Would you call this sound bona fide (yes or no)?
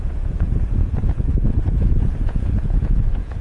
no